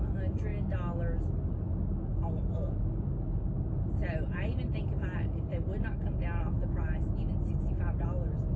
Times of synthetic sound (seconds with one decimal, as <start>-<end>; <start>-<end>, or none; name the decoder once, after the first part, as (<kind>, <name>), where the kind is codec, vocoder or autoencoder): none